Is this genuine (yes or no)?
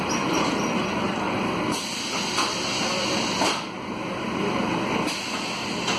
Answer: yes